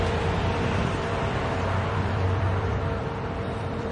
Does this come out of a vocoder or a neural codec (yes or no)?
yes